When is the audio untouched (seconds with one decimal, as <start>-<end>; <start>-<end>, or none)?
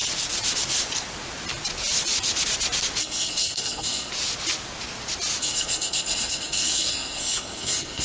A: 0.0-3.0; 4.1-5.4